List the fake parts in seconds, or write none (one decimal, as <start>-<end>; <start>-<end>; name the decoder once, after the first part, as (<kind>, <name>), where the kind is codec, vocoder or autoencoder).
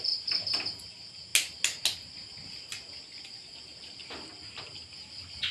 none